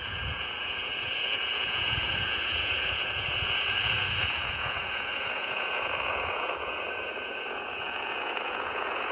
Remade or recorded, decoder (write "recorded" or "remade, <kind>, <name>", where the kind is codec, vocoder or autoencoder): remade, vocoder, Vocos